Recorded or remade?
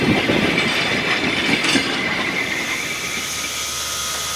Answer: recorded